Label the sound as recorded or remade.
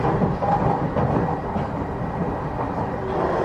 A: recorded